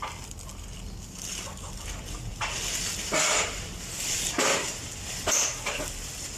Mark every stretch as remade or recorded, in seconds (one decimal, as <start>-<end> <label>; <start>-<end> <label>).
0.0-0.5 recorded; 0.5-1.4 remade; 1.4-6.4 recorded